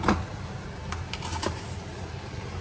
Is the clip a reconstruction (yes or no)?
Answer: no